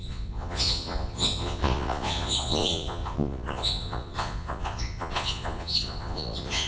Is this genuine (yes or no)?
no